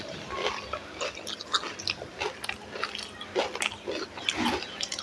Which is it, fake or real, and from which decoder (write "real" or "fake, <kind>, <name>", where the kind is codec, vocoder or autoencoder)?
real